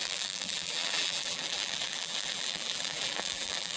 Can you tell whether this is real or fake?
fake